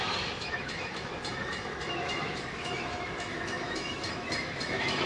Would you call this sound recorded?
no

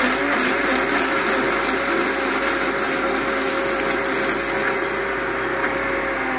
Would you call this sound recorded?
yes